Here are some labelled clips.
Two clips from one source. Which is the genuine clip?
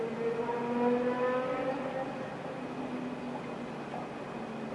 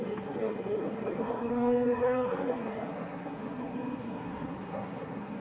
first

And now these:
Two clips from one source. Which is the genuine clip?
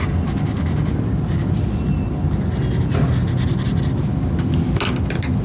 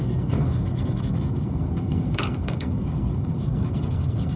first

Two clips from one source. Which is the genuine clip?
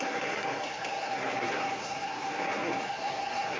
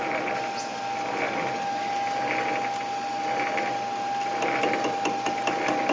second